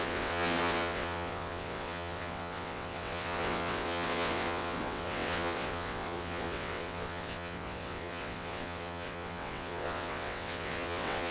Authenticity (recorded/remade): remade